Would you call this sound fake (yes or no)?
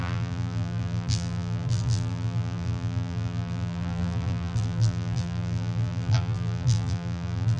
yes